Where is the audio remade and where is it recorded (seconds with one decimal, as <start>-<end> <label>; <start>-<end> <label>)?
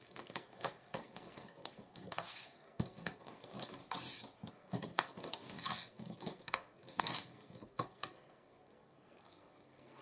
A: 0.0-3.8 remade; 3.8-4.5 recorded; 4.5-10.0 remade